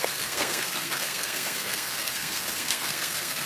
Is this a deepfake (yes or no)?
yes